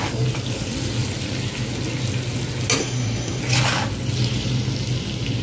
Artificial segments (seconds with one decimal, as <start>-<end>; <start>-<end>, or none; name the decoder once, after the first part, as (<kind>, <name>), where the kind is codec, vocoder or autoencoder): 2.8-3.4 (codec, SNAC)